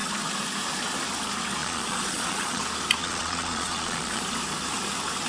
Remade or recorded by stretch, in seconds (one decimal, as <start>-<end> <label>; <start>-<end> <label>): 0.0-1.6 recorded; 1.6-2.6 remade; 2.6-3.0 recorded; 3.0-4.2 remade; 4.2-5.3 recorded